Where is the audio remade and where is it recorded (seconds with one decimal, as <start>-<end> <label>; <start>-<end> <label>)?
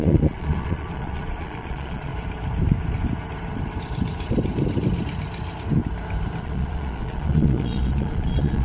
0.0-2.1 remade; 2.1-6.4 recorded; 6.4-8.6 remade